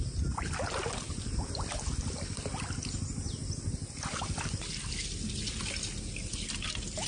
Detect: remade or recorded recorded